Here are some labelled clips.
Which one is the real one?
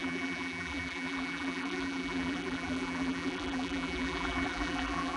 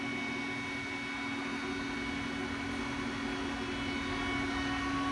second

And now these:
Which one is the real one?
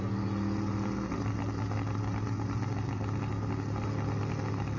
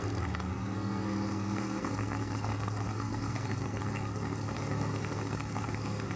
first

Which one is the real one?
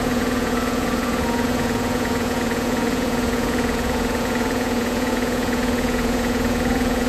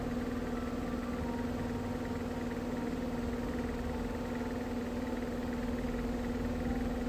second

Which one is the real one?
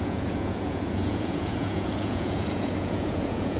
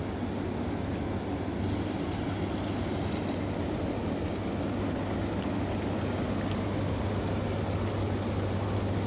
second